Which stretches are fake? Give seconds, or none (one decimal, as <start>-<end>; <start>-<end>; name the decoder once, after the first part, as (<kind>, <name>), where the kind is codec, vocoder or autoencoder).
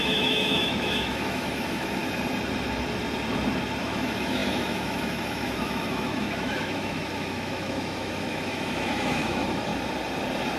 0.0-2.0 (autoencoder, DAC-VAE); 3.8-9.7